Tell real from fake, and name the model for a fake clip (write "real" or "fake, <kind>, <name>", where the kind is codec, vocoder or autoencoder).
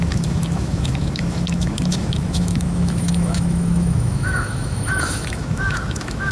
fake, autoencoder, DAC-VAE